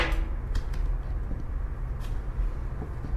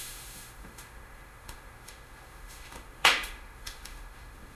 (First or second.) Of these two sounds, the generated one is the second